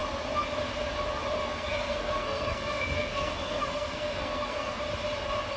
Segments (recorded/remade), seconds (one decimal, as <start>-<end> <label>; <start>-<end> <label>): 0.0-1.4 recorded; 1.4-4.8 remade; 4.8-5.6 recorded